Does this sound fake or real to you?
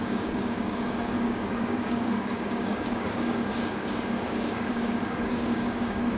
fake